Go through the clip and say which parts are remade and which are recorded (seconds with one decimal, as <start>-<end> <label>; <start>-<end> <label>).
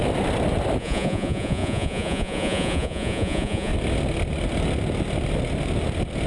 0.0-0.8 recorded; 0.8-3.7 remade; 3.7-6.3 recorded